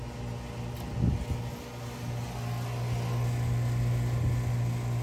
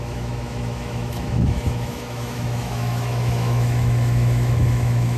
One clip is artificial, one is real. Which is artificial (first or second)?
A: second